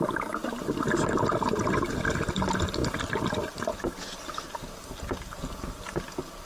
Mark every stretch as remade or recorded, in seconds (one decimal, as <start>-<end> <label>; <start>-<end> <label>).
0.0-6.4 recorded